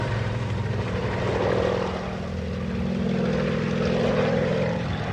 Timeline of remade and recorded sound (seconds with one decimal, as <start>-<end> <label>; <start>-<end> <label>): 0.0-1.0 remade; 1.0-4.1 recorded; 4.1-5.1 remade